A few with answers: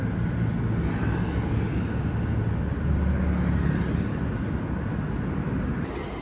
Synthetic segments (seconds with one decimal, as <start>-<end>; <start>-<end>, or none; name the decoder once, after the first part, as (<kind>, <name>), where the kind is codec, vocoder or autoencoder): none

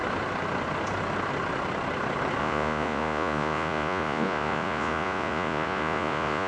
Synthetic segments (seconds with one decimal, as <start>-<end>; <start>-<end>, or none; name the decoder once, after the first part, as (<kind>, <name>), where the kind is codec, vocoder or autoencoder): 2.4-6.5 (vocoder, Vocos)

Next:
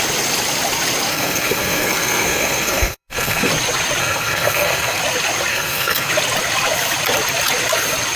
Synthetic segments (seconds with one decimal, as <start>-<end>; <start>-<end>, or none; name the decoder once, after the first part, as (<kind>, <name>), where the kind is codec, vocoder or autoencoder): 1.1-3.5 (codec, SNAC); 4.0-5.0; 5.5-6.1